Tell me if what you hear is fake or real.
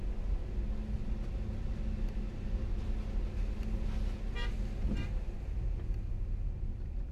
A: real